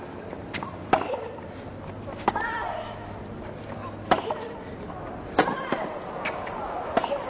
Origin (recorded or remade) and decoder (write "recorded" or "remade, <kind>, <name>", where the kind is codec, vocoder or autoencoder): recorded